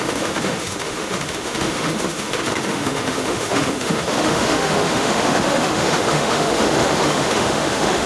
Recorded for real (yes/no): no